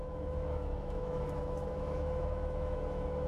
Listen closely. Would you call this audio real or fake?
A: fake